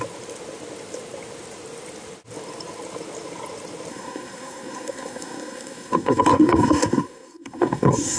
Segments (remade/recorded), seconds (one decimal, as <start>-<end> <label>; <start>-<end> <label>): 0.0-3.9 recorded; 3.9-8.2 remade